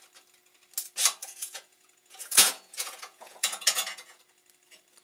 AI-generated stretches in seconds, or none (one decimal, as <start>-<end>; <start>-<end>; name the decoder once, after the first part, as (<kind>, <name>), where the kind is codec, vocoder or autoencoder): 1.2-4.2 (vocoder, Vocos)